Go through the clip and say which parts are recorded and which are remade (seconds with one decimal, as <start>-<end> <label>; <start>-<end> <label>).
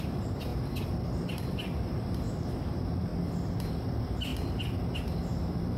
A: 0.0-0.5 remade; 0.5-1.3 recorded; 1.3-3.1 remade; 3.1-3.6 recorded; 3.6-4.3 remade; 4.3-5.0 recorded; 5.0-5.8 remade